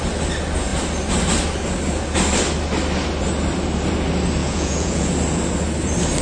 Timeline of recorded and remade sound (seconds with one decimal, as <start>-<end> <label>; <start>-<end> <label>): 0.0-4.4 recorded; 4.4-5.1 remade; 5.1-6.2 recorded